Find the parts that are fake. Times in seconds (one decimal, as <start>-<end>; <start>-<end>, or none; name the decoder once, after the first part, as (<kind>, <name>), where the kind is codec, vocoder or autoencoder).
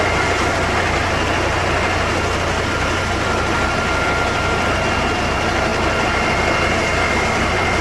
none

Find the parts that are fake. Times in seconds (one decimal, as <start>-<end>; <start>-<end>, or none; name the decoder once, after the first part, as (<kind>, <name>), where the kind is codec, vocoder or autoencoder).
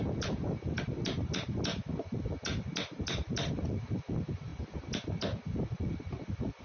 none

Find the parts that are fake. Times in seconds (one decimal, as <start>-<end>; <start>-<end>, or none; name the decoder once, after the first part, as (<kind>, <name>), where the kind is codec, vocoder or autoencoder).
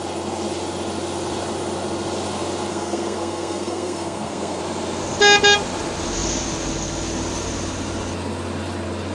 2.7-4.6 (codec, SNAC)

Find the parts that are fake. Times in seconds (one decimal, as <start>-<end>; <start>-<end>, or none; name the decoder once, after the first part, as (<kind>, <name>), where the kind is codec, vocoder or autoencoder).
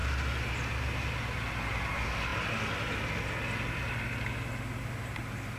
none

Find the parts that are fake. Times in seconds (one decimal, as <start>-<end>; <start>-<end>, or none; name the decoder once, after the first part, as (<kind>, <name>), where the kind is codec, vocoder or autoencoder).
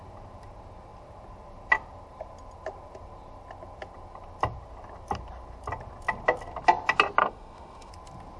7.2-7.9 (autoencoder, DAC-VAE)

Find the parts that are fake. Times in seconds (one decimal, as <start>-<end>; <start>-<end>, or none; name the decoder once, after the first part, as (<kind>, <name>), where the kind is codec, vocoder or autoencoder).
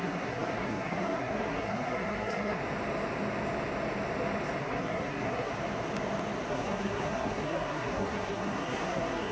0.0-2.6 (codec, SNAC); 4.6-5.5; 6.5-9.3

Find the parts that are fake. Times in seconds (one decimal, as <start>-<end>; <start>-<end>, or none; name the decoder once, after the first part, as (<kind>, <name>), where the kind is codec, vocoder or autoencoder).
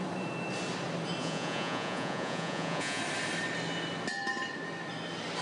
1.2-3.0 (vocoder, Vocos)